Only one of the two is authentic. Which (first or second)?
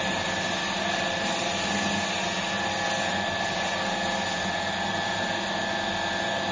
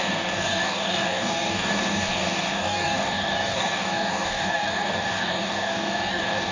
first